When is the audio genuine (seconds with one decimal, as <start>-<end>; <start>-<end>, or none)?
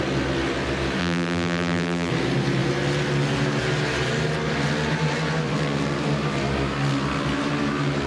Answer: 0.0-1.0; 2.1-8.1